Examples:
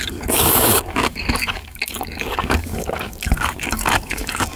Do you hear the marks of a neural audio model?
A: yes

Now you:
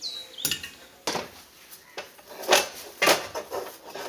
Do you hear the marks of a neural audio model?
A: no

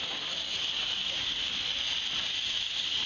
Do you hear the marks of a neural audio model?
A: no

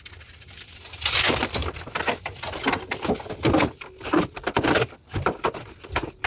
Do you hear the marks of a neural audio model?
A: no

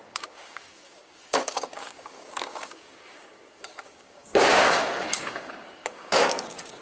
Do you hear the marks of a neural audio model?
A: yes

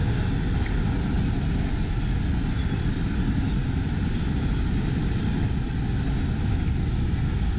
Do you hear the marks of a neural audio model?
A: no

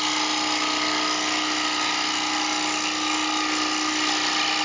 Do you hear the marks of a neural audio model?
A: no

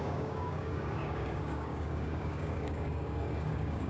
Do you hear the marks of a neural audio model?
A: yes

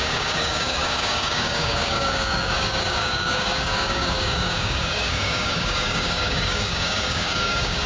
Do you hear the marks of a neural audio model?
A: yes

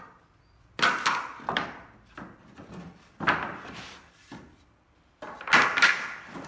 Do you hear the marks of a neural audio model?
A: no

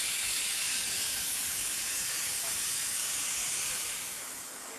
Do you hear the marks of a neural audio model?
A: yes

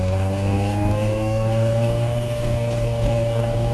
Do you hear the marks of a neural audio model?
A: yes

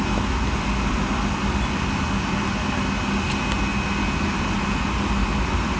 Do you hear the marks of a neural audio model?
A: no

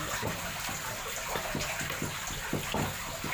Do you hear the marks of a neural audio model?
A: no